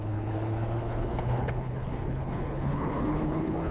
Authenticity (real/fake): fake